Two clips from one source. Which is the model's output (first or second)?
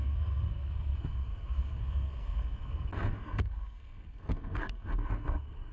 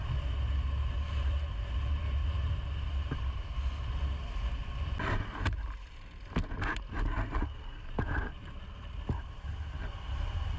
first